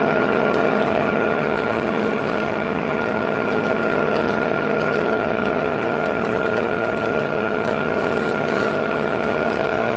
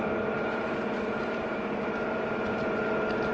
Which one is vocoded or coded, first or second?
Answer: first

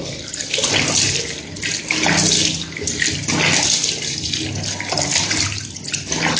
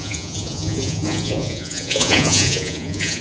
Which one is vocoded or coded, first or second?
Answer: second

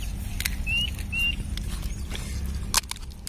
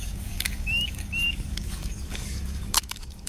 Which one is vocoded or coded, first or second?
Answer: second